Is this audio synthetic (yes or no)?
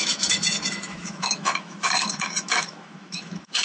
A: yes